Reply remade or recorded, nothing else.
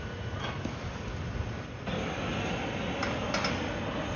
recorded